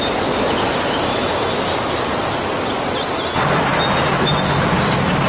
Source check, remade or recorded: recorded